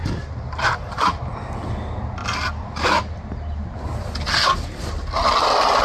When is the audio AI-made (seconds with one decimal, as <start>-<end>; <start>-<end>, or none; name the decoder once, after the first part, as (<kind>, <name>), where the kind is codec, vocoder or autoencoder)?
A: none